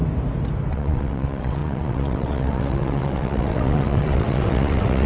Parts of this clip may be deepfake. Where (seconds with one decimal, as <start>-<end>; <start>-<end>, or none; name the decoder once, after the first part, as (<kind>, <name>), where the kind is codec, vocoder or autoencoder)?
0.7-5.1 (vocoder, WaveNeXt)